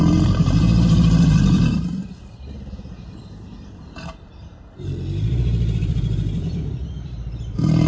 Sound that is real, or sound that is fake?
fake